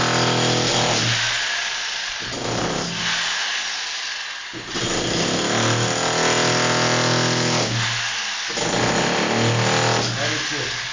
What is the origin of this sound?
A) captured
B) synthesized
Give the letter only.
A